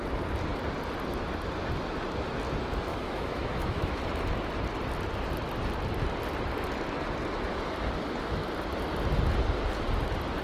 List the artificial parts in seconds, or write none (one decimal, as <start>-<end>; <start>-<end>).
2.9-4.0